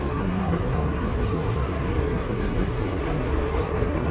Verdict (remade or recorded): remade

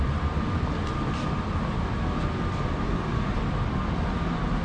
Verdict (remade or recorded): recorded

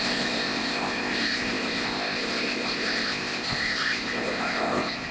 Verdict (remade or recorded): remade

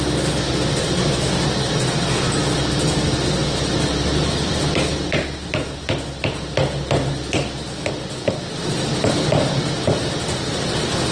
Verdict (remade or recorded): recorded